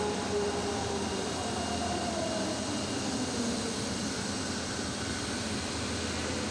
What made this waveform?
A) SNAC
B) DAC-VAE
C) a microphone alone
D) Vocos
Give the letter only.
C